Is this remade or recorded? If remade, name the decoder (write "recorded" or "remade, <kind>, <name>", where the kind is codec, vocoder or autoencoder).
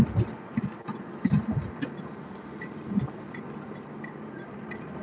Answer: recorded